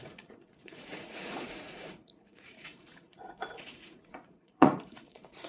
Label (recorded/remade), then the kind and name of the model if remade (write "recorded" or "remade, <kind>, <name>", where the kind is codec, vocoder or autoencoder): remade, vocoder, Vocos